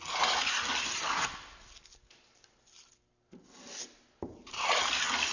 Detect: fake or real real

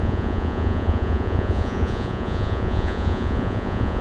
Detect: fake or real fake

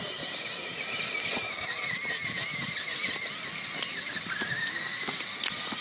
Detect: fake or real real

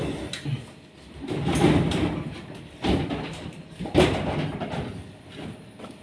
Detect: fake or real real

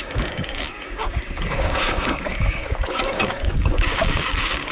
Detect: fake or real fake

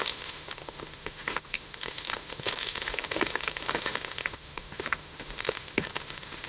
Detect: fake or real fake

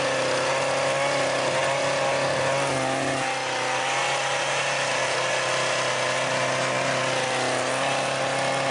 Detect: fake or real real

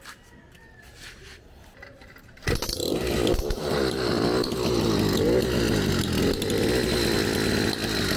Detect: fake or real real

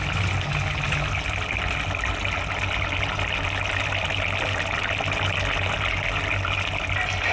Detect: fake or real real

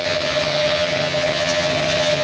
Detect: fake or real fake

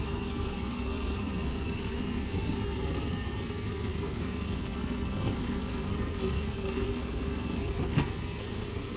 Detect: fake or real fake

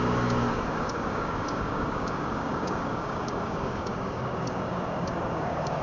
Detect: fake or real fake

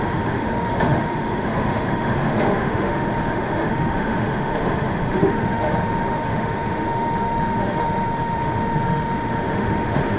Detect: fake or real fake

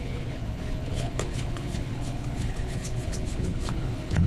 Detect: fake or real fake